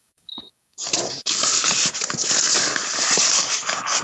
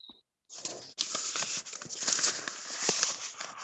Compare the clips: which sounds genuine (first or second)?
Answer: second